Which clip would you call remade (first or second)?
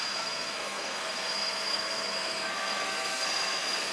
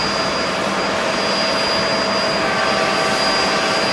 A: first